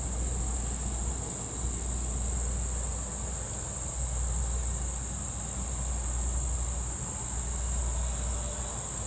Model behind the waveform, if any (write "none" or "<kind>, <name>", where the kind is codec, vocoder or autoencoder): none